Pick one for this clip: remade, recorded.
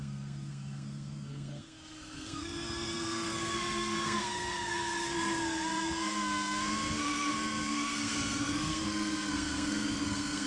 remade